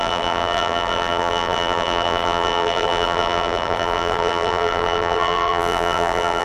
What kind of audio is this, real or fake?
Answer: fake